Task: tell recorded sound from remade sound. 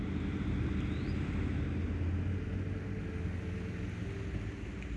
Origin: recorded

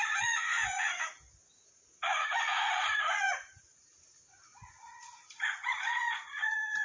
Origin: remade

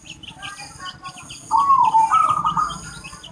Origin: recorded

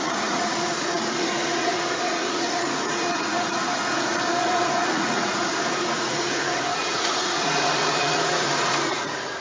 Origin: remade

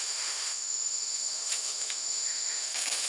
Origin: remade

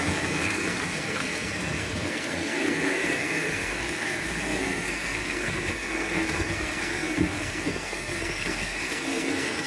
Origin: remade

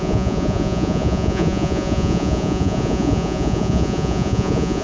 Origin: remade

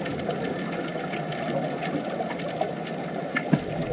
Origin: recorded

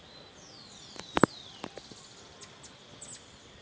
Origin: recorded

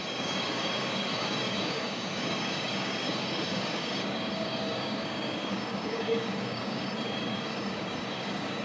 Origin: remade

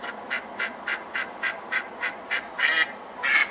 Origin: recorded